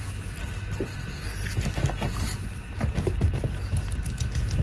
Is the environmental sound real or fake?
real